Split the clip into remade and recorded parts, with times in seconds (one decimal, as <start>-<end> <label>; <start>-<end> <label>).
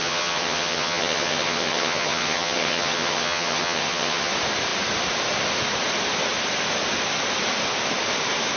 0.0-4.3 remade; 4.3-8.6 recorded